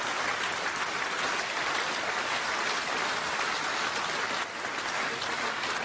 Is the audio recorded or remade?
recorded